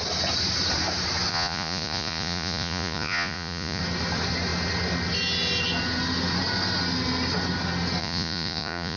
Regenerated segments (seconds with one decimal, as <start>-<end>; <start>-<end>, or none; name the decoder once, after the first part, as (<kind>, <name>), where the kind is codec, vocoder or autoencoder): 1.3-3.8 (vocoder, Vocos); 8.0-9.0